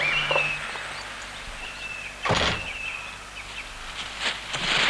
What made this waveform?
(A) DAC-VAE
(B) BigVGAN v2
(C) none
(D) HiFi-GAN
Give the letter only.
C